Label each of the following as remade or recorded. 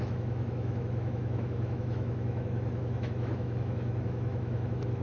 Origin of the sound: remade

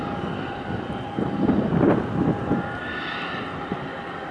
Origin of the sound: recorded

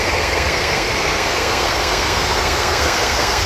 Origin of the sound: remade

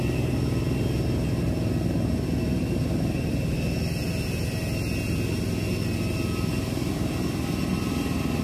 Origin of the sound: recorded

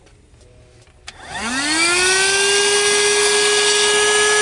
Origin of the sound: recorded